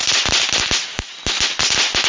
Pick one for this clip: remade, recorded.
recorded